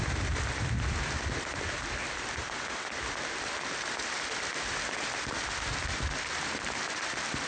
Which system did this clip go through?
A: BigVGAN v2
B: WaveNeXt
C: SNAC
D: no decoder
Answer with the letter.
A